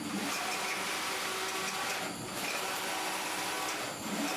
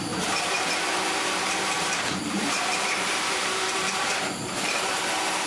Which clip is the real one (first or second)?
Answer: first